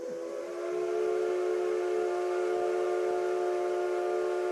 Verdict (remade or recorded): recorded